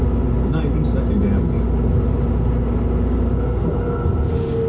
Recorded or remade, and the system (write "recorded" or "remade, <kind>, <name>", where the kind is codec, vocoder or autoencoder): recorded